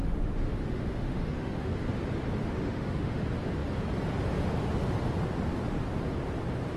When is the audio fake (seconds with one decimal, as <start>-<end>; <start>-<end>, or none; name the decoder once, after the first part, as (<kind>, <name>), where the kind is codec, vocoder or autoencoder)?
0.0-1.7 (autoencoder, DAC-VAE); 2.4-3.2